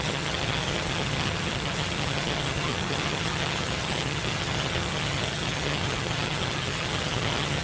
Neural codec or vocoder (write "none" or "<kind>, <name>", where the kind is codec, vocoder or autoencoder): vocoder, HiFi-GAN